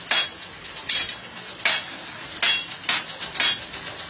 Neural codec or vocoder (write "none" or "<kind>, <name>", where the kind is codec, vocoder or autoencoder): none